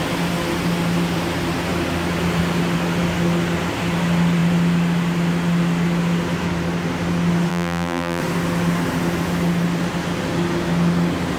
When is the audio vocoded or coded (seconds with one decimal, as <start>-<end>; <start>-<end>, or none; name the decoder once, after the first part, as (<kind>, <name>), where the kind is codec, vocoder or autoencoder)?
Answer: 7.5-8.2 (vocoder, BigVGAN v2)

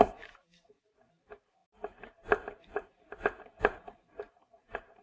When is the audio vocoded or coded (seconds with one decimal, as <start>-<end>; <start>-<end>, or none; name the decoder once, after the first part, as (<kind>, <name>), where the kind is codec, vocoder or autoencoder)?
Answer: 0.0-5.0 (vocoder, BigVGAN v2)